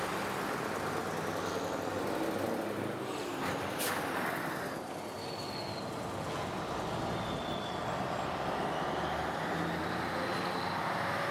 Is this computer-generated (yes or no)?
no